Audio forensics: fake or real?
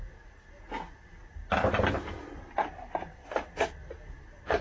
real